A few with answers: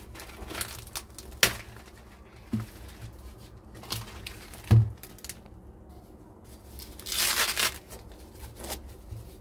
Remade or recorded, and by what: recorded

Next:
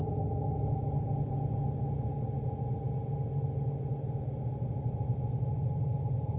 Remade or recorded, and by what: recorded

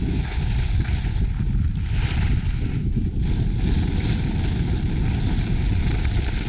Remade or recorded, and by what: recorded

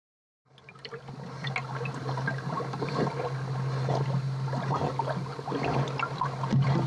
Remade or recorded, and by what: recorded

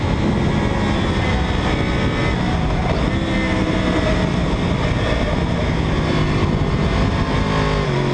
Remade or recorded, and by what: recorded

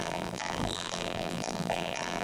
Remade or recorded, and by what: remade, vocoder, BigVGAN v2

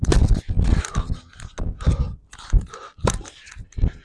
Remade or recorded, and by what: recorded